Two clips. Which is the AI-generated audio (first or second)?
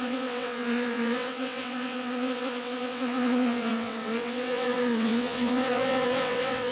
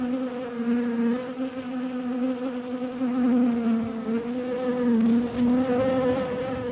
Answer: first